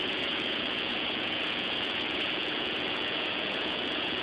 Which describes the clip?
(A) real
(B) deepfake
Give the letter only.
B